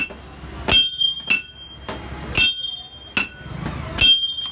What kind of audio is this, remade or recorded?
recorded